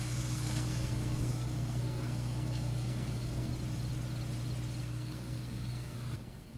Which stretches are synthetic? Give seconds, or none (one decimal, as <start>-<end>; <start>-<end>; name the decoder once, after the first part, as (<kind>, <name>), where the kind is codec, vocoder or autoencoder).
0.0-3.5 (codec, SNAC); 4.8-6.6